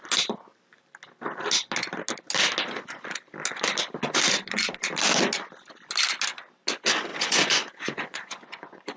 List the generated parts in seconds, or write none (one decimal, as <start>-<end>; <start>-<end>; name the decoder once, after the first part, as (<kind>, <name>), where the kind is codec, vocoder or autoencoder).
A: 7.1-9.0 (vocoder, Vocos)